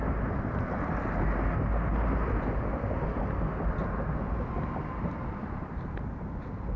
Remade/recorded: recorded